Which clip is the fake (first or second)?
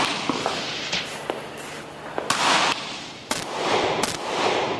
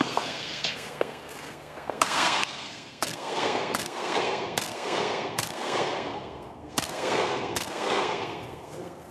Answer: second